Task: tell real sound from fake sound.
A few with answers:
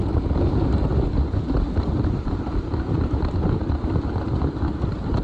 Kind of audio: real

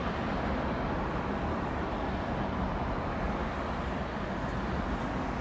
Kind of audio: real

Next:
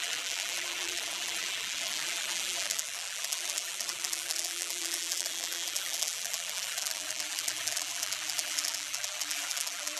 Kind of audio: fake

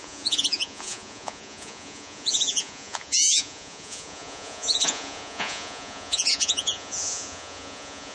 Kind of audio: fake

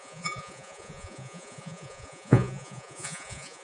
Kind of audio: fake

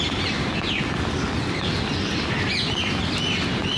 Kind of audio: real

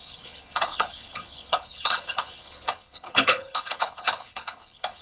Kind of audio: fake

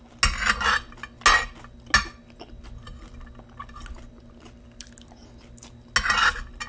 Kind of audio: real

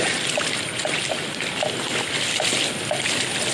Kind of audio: real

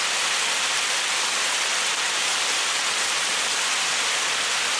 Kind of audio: real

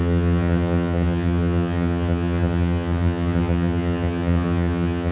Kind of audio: fake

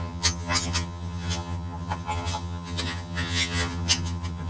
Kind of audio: fake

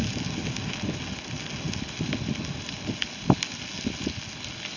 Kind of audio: real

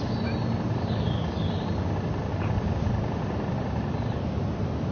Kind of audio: real